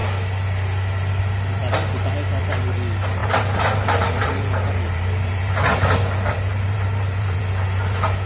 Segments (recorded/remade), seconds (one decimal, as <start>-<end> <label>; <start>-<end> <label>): 0.0-3.2 recorded; 3.2-5.5 remade; 5.5-6.5 recorded; 6.5-7.4 remade; 7.4-8.3 recorded